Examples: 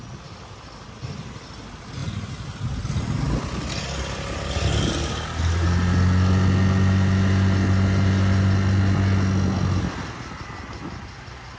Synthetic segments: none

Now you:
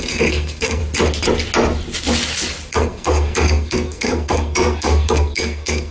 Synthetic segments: 0.0-0.8 (codec, SNAC); 2.7-5.9

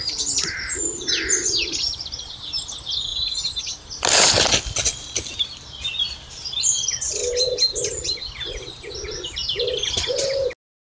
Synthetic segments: none

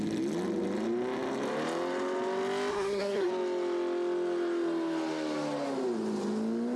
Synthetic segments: 2.7-3.3 (codec, SNAC)

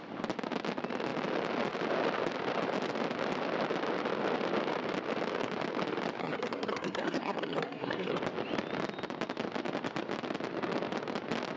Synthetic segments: 6.2-8.2 (codec, SNAC)